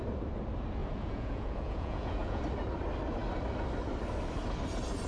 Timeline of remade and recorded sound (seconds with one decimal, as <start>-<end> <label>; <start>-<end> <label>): 0.0-0.8 recorded; 0.8-2.4 remade; 2.4-5.1 recorded